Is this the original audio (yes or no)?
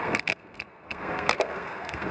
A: no